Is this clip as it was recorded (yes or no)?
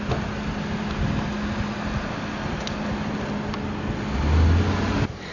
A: yes